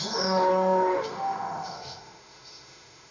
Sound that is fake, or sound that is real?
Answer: fake